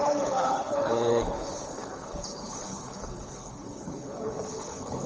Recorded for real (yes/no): no